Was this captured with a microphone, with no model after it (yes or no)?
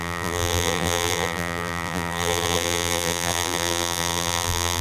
no